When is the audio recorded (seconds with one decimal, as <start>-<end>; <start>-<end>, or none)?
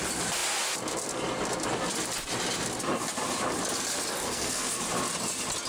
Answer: 0.0-4.2; 4.8-5.7